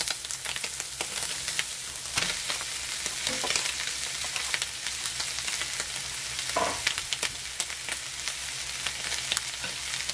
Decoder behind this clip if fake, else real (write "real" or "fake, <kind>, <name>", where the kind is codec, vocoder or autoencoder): real